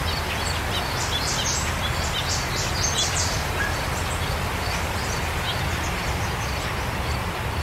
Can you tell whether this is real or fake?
real